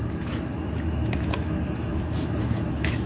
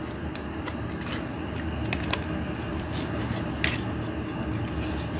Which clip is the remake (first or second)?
first